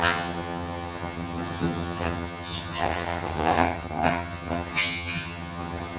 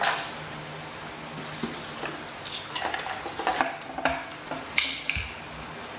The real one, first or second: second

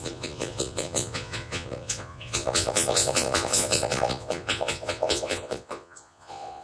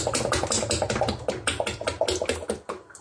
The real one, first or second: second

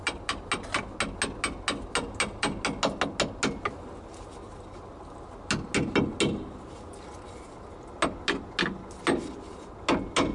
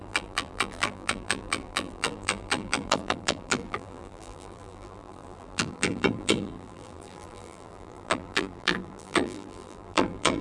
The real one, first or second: first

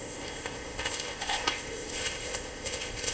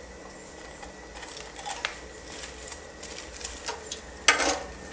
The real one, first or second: second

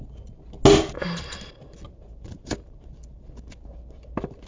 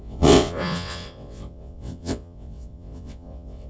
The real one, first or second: first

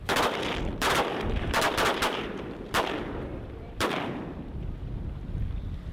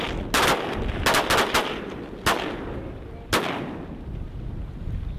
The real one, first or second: second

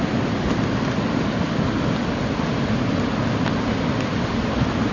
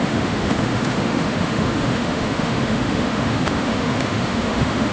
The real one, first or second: first